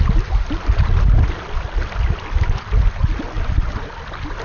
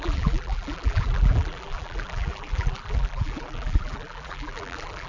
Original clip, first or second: first